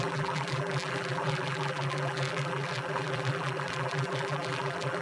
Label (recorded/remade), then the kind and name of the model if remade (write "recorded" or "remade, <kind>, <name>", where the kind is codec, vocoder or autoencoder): remade, vocoder, BigVGAN v2